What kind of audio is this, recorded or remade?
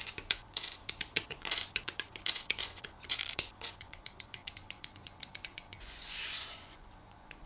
remade